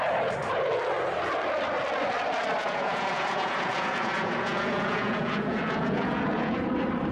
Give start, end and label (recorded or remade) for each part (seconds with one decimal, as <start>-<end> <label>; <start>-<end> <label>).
0.0-2.6 recorded; 2.6-6.6 remade; 6.6-7.1 recorded

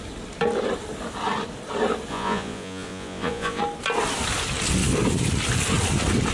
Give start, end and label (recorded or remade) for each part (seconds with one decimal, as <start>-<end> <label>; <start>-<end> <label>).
0.0-2.1 recorded; 2.1-3.6 remade; 3.6-6.3 recorded